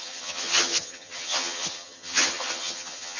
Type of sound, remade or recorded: remade